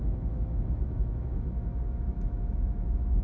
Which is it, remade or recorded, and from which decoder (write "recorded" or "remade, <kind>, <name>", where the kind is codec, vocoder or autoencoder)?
remade, autoencoder, DAC-VAE